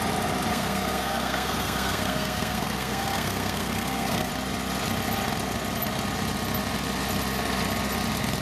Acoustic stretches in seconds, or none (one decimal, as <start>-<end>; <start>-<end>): 0.0-0.5; 4.3-8.4